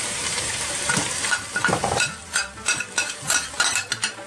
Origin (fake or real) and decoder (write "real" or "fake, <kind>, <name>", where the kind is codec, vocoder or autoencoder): fake, vocoder, BigVGAN v2